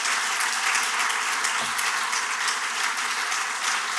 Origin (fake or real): real